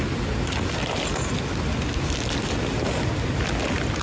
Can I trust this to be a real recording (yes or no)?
yes